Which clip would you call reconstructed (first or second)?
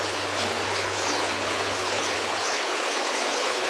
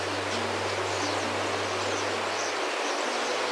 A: first